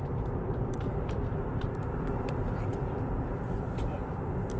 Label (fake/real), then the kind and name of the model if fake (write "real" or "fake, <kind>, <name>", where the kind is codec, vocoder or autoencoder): fake, vocoder, BigVGAN v2